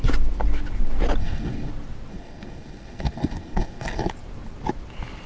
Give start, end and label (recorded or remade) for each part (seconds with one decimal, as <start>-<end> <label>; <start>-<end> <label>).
0.0-1.2 recorded; 1.2-1.7 remade; 1.7-2.1 recorded; 2.1-4.1 remade; 4.1-5.3 recorded